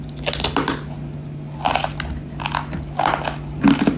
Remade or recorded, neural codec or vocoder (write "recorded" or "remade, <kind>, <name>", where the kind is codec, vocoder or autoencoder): recorded